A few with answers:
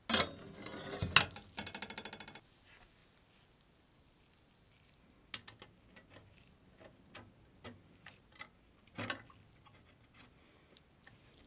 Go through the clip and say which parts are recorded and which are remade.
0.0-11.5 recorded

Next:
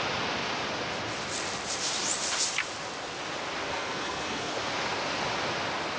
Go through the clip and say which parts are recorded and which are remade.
0.0-3.7 recorded; 3.7-4.5 remade; 4.5-6.0 recorded

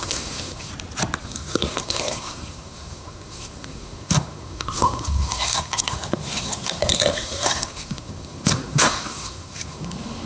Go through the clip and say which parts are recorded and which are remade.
0.0-0.7 remade; 0.7-1.2 recorded; 1.2-10.3 remade

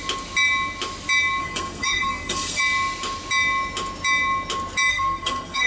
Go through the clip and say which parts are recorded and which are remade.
0.0-1.4 recorded; 1.4-2.6 remade; 2.6-4.9 recorded; 4.9-5.7 remade